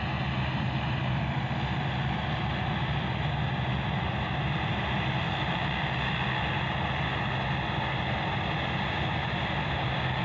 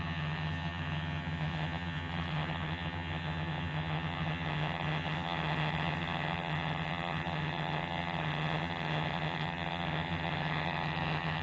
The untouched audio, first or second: first